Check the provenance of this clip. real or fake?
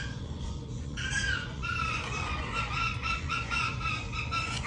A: fake